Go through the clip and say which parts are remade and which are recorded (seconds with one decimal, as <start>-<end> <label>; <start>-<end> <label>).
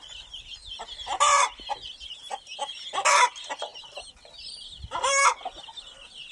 0.0-6.3 recorded